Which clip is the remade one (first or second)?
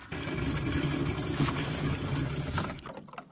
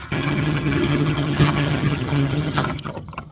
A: second